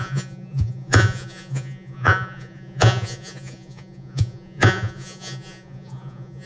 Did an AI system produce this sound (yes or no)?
yes